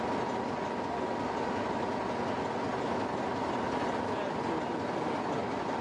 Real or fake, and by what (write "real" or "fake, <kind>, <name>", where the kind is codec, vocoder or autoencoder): real